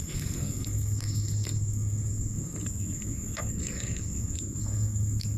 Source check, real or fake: fake